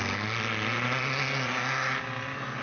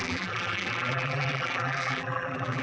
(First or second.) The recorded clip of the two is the first